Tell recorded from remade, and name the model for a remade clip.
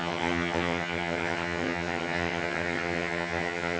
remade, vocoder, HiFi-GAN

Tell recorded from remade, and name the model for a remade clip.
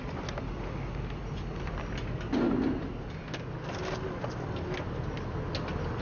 recorded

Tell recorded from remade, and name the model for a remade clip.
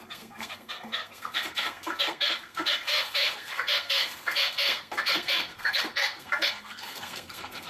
remade, codec, SNAC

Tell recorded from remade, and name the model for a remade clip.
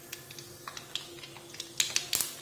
recorded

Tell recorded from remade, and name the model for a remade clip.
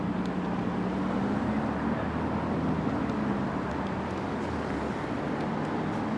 recorded